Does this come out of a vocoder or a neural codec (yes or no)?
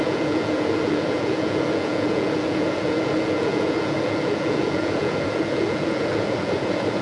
yes